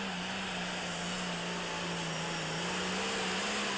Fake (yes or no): no